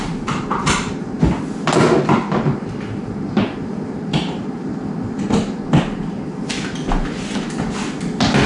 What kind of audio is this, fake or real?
real